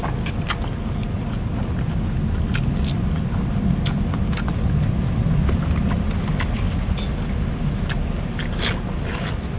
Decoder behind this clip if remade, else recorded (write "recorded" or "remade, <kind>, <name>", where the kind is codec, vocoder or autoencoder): recorded